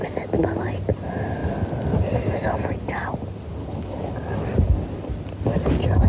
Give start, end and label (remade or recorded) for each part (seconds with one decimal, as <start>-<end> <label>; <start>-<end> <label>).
0.0-3.6 recorded; 3.6-4.1 remade; 4.1-6.1 recorded

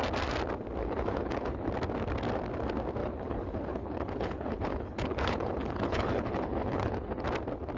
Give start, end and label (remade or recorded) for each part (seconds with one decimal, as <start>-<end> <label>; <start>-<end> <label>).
0.0-0.8 recorded; 0.8-1.7 remade; 1.7-3.0 recorded; 3.0-7.2 remade; 7.2-7.8 recorded

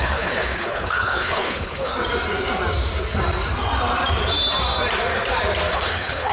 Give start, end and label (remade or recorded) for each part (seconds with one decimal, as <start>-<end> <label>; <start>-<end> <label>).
0.0-1.9 remade; 1.9-5.7 recorded; 5.7-6.3 remade

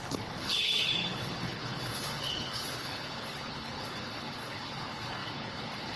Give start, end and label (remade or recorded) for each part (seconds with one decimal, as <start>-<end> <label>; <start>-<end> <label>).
0.0-6.0 remade

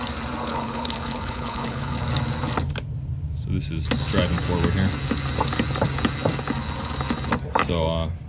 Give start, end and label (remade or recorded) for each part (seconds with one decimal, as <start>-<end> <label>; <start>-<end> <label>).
0.0-0.5 recorded; 0.5-2.0 remade; 2.0-8.3 recorded

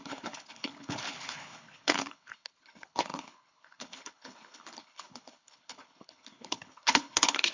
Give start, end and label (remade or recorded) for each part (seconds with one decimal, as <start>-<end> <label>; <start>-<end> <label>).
0.0-7.5 remade

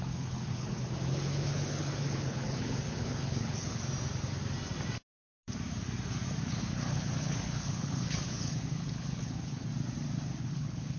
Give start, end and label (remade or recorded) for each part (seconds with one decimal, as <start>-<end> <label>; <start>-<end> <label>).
0.0-3.9 remade; 3.9-6.4 recorded; 6.4-9.7 remade; 9.7-10.4 recorded; 10.4-11.0 remade